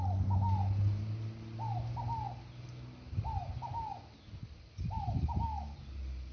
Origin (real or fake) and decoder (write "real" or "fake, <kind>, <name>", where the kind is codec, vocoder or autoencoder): real